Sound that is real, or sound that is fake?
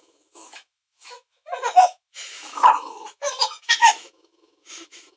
fake